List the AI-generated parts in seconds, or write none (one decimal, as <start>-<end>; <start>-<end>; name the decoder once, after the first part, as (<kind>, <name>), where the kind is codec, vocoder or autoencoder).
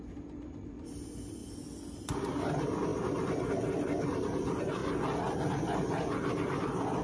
0.0-1.4 (vocoder, BigVGAN v2); 2.2-4.8; 6.6-7.0